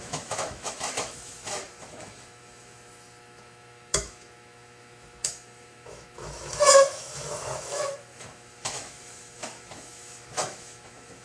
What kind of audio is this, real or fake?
fake